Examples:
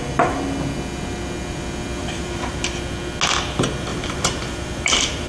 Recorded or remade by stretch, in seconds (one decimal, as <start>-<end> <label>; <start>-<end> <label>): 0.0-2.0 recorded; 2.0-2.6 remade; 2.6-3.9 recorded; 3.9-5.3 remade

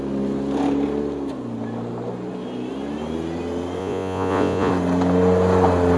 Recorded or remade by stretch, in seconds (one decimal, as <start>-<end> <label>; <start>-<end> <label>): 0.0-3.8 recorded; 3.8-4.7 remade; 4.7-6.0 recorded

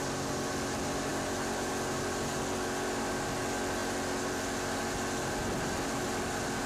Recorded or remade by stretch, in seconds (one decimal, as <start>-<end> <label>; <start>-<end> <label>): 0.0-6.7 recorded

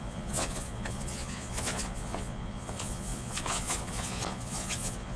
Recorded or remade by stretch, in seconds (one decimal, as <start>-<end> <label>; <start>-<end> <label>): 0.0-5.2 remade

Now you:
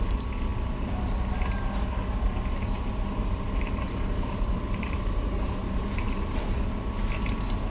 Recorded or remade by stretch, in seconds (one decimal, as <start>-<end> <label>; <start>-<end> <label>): 0.0-3.2 recorded; 3.2-6.4 remade; 6.4-7.7 recorded

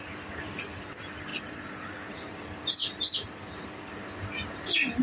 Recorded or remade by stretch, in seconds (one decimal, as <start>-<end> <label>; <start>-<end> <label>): 0.0-5.0 recorded

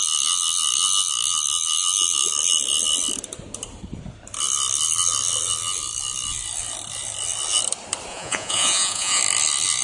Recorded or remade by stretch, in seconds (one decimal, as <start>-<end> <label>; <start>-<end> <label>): 0.0-8.1 recorded; 8.1-9.2 remade; 9.2-9.8 recorded